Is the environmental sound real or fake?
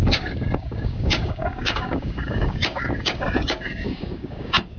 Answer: fake